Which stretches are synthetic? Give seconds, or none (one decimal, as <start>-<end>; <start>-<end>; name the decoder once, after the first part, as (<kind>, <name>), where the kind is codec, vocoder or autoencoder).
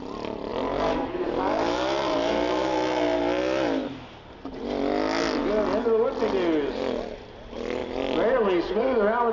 none